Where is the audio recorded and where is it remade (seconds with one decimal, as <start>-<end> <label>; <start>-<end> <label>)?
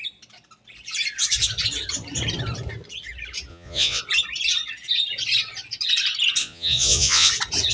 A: 0.0-3.5 recorded; 3.5-4.0 remade; 4.0-6.4 recorded; 6.4-7.3 remade; 7.3-7.7 recorded